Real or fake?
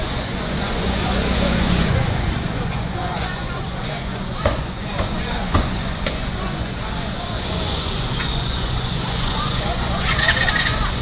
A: fake